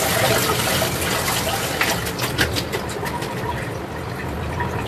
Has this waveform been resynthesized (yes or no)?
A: no